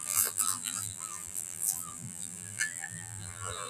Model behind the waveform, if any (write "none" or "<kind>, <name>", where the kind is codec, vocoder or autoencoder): vocoder, BigVGAN v2